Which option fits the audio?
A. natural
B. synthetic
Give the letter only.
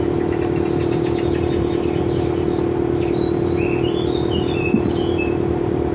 A